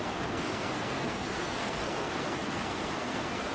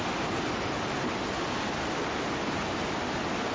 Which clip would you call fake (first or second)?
first